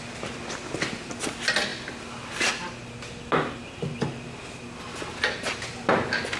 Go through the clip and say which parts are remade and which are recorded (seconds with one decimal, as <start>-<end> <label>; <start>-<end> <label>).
0.0-6.4 recorded